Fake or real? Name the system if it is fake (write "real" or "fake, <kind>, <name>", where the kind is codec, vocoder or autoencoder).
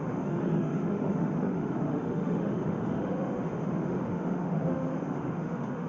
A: fake, autoencoder, DAC-VAE